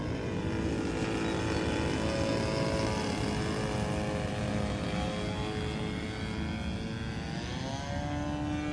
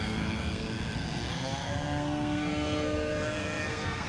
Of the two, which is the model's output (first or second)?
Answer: second